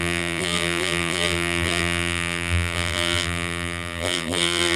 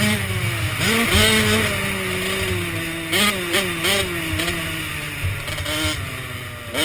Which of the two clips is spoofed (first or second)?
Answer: first